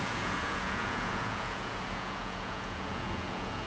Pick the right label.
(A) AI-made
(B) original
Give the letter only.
A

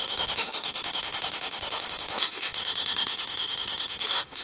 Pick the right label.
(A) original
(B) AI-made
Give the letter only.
B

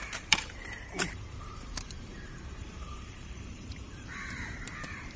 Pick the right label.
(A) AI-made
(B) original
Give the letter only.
A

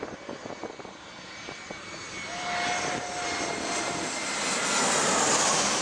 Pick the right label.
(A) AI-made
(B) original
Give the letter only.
B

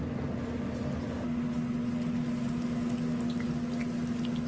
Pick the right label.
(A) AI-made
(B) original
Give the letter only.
B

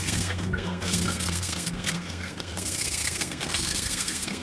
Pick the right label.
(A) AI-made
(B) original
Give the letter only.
A